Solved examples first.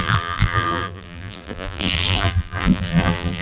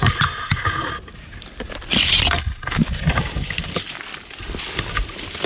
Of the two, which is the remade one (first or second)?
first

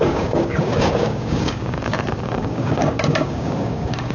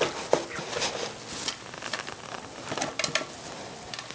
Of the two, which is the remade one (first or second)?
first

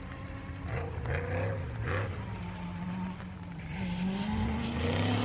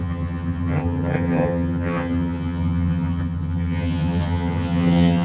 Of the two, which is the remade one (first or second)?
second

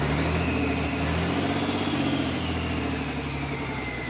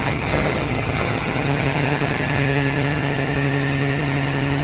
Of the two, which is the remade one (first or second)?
second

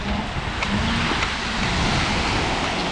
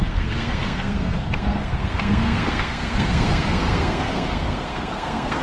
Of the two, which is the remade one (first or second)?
second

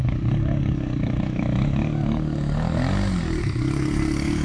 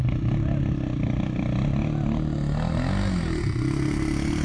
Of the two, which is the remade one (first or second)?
first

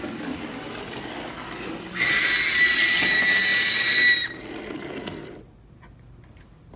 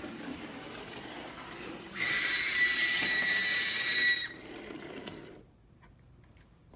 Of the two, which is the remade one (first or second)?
second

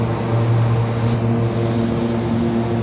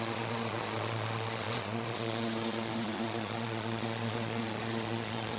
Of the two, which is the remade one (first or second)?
second